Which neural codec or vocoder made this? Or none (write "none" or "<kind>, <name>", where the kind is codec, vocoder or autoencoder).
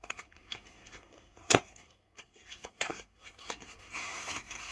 codec, SNAC